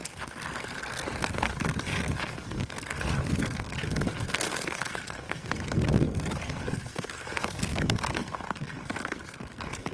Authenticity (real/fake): fake